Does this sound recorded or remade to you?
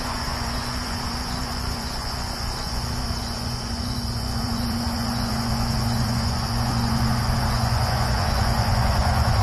remade